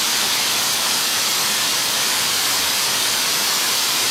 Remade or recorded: remade